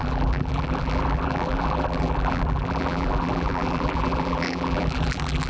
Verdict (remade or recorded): remade